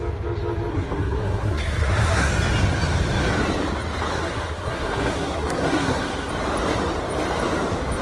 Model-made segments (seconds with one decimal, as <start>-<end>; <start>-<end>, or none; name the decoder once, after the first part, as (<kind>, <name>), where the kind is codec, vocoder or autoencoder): 0.7-2.3 (codec, SNAC); 4.1-6.3

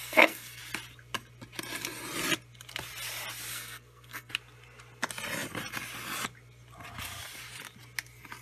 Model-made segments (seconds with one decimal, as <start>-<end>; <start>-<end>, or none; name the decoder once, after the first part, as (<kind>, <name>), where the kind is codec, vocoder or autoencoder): 0.0-0.6 (codec, SNAC); 3.5-4.3

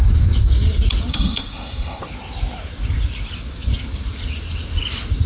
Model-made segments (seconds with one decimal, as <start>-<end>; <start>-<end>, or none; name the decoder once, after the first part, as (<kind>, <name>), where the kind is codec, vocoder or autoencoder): 1.1-2.0 (codec, SNAC)

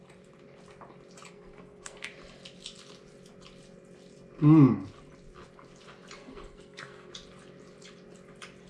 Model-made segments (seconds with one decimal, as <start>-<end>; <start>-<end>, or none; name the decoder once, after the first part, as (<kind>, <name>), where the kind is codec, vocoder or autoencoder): 1.3-2.1 (codec, SNAC); 6.2-7.1